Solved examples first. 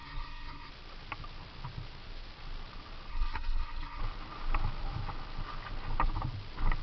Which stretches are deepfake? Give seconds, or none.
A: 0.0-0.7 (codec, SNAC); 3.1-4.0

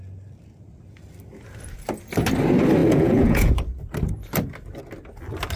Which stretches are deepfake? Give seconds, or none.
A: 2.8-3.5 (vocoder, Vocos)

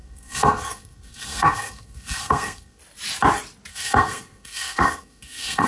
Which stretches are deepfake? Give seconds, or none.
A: 0.0-2.8 (codec, SNAC); 3.7-5.7

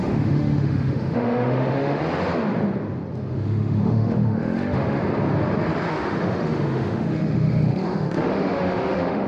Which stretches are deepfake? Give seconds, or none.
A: 0.0-2.0 (autoencoder, DAC-VAE); 3.2-5.0; 5.9-9.3

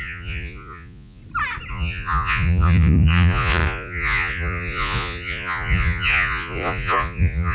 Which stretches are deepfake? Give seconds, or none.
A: 0.0-1.2 (vocoder, Vocos); 1.7-7.5